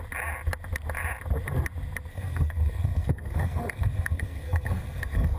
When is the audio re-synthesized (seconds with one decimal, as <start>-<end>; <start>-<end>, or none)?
2.1-5.4